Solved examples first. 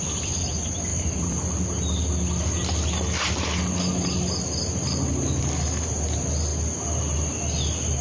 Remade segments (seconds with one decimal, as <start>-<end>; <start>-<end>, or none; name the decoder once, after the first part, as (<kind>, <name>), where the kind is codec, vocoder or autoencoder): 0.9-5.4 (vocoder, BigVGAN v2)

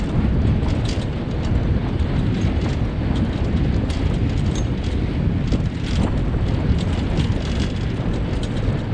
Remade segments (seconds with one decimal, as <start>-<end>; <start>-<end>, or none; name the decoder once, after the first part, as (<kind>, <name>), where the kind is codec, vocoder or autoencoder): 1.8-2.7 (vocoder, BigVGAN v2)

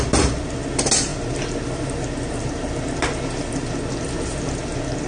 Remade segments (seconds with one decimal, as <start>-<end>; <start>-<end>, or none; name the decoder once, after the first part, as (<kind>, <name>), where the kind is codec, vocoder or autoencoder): none

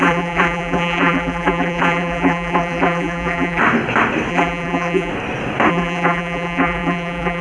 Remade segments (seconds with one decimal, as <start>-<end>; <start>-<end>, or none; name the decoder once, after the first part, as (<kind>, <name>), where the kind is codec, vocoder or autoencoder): 0.0-3.6 (vocoder, BigVGAN v2); 4.3-5.1; 5.7-7.4

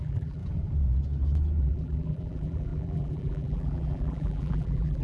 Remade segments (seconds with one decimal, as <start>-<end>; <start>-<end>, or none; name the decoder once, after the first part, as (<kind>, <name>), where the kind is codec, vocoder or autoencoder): 0.0-0.4 (vocoder, BigVGAN v2); 1.6-5.0